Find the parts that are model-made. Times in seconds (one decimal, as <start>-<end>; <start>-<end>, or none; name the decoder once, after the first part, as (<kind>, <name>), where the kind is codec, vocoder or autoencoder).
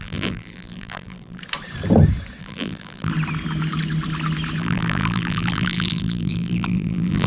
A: 0.0-1.4 (vocoder, BigVGAN v2); 2.4-3.1; 4.6-7.3